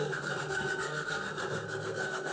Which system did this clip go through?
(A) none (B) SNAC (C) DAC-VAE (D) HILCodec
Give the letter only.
B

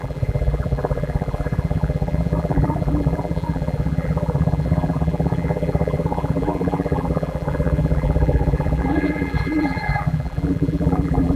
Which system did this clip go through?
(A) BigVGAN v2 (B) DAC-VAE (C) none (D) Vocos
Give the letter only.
A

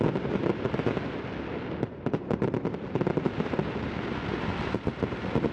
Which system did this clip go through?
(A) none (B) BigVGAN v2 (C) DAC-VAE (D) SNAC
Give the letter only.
A